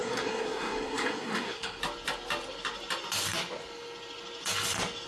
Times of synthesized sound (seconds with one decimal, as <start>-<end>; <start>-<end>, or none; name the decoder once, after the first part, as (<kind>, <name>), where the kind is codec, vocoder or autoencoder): 0.0-1.8 (codec, SNAC)